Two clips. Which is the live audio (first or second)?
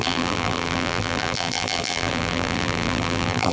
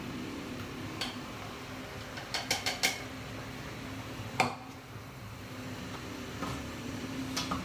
second